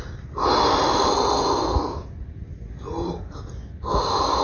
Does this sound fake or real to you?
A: real